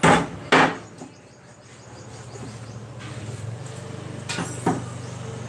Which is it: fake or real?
real